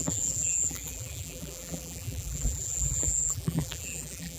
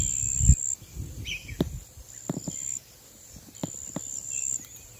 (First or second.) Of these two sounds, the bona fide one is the second